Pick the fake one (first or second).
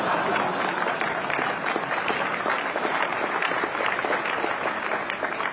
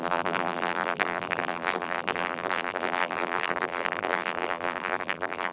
second